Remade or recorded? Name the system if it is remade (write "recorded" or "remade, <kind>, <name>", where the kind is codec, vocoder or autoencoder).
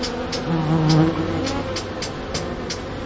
recorded